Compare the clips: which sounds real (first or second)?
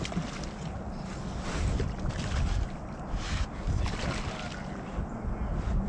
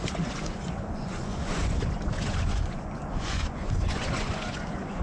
first